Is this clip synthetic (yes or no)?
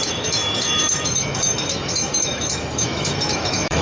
yes